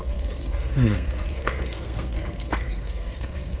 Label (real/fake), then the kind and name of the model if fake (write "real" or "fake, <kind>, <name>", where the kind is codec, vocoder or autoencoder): fake, codec, SNAC